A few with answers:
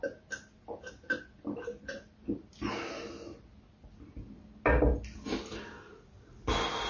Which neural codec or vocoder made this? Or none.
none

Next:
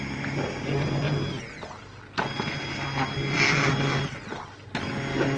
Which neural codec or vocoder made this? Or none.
none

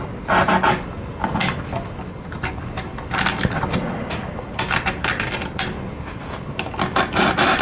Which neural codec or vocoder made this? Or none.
none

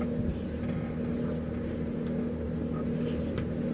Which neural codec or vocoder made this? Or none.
none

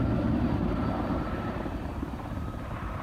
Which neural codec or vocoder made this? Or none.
vocoder, BigVGAN v2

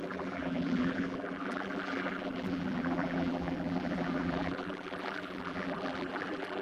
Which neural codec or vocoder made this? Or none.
vocoder, BigVGAN v2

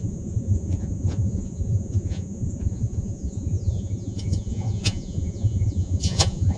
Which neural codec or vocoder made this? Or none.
vocoder, Vocos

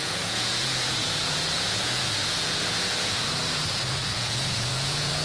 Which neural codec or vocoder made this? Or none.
vocoder, Vocos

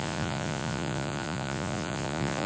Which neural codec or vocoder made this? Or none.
vocoder, Vocos